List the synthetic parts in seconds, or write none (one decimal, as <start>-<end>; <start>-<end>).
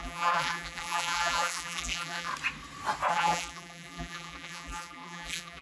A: 0.0-2.3; 3.1-5.6